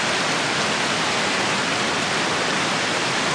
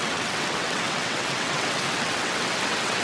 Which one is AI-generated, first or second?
second